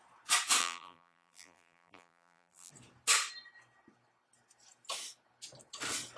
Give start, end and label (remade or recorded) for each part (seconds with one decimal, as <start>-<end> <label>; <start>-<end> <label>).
0.0-0.6 recorded; 0.6-2.7 remade; 2.7-6.2 recorded